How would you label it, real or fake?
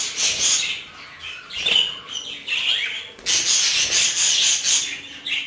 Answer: real